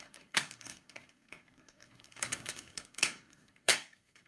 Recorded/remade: remade